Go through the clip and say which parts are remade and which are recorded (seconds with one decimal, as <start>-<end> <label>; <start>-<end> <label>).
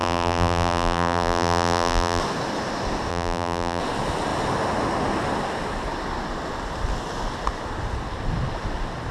0.0-2.2 remade; 2.2-3.1 recorded; 3.1-3.8 remade; 3.8-9.1 recorded